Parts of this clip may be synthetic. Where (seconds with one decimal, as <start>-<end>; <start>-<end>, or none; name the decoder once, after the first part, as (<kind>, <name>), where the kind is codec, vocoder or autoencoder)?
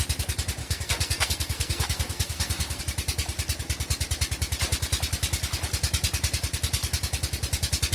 0.6-2.8 (codec, SNAC)